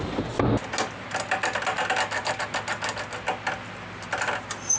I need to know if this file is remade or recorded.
recorded